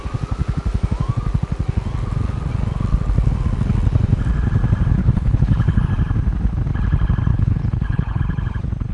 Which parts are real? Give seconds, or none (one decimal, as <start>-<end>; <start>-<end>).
0.0-5.0; 5.8-7.3; 8.2-8.9